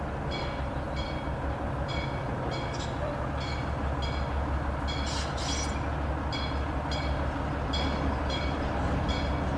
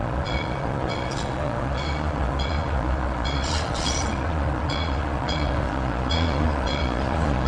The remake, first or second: second